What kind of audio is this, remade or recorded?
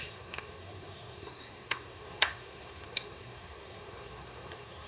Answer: remade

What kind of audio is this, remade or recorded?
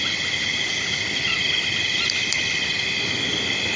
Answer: recorded